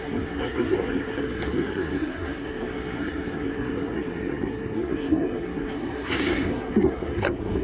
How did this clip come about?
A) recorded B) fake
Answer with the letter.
B